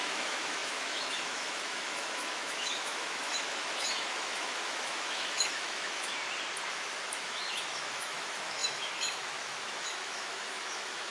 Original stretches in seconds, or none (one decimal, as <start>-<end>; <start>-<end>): 6.1-6.7

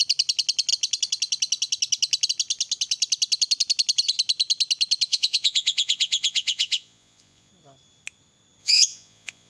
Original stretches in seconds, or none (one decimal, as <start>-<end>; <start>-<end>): 0.0-5.1; 7.5-8.6